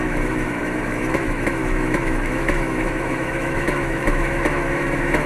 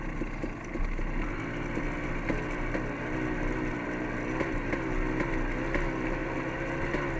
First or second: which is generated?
first